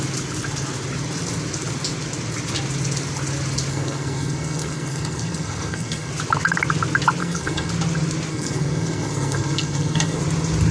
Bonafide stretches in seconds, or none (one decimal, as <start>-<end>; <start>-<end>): 0.0-3.7; 6.1-7.2; 7.7-8.3; 10.2-10.7